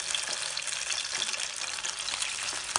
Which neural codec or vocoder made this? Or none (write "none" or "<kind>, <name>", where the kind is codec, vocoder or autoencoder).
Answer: none